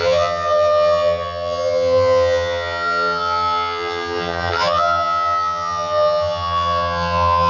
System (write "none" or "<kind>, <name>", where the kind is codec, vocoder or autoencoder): vocoder, HiFi-GAN